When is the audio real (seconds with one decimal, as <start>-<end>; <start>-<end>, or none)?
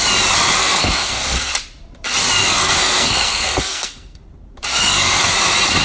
0.0-0.6; 1.5-2.4; 4.2-4.7; 5.2-5.8